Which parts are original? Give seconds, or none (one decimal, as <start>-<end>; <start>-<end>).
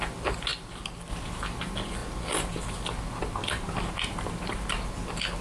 0.0-5.4